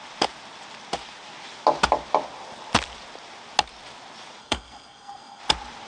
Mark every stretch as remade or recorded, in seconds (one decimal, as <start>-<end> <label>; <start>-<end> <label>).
0.0-4.4 recorded; 4.4-5.4 remade; 5.4-5.9 recorded